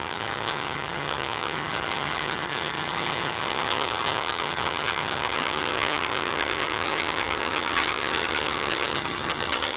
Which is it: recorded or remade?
remade